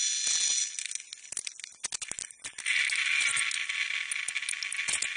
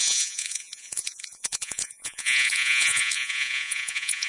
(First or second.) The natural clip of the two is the first